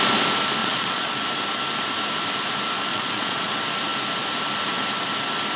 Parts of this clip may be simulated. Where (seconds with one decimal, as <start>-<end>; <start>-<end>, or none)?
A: 0.6-1.1; 2.9-3.5